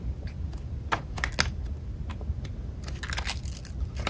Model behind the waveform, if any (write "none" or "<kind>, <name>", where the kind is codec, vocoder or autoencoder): none